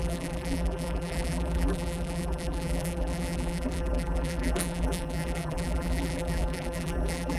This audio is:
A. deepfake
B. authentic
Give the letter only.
A